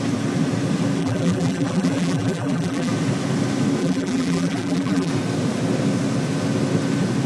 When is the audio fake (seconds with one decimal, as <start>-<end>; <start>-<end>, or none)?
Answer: 1.0-2.9; 3.8-5.1